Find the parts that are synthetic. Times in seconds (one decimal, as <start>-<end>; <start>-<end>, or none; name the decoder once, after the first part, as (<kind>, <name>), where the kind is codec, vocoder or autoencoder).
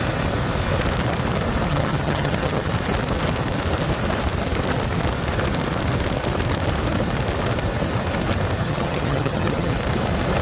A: 1.7-2.7 (vocoder, HiFi-GAN); 8.6-9.7